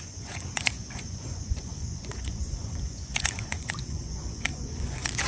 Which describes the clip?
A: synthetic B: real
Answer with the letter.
A